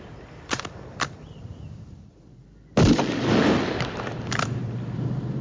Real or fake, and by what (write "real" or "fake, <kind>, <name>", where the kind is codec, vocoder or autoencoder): fake, vocoder, BigVGAN v2